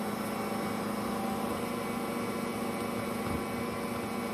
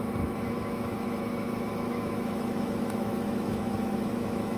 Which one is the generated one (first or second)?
second